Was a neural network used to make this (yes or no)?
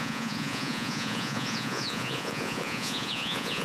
yes